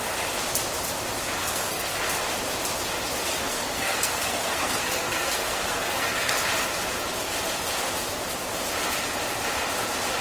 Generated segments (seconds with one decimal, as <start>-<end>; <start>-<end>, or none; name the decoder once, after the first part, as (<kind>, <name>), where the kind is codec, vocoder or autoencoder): 1.4-2.0 (codec, SNAC); 3.2-6.3

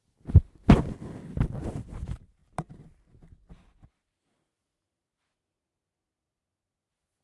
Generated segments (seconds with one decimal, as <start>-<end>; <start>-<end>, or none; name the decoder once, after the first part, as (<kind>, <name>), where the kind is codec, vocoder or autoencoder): none

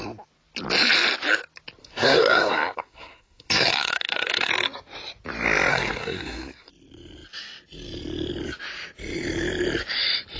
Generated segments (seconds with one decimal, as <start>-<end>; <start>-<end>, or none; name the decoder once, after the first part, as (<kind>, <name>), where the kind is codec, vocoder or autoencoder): 1.8-4.5 (codec, SNAC); 5.7-6.7

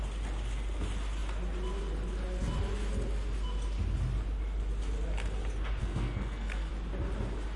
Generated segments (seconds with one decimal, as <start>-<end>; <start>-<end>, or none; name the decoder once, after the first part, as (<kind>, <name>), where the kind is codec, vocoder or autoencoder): 5.8-6.7 (codec, SNAC)

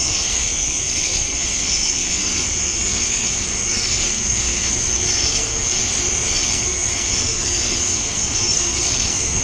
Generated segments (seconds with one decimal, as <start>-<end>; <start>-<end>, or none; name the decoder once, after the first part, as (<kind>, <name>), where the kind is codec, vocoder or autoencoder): 0.0-5.8 (codec, SNAC); 6.3-9.4

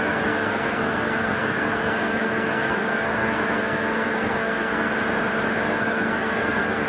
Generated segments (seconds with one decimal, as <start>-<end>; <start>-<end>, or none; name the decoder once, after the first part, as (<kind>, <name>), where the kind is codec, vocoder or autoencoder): 0.0-4.9 (codec, SNAC); 5.7-6.9

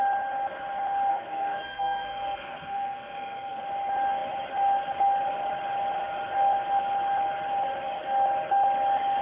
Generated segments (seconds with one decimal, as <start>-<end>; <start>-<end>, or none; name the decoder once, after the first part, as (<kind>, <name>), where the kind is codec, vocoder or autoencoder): 1.1-3.6 (codec, SNAC)